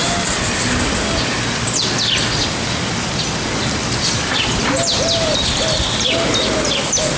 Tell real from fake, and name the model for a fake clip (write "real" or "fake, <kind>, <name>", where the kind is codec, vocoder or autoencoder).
real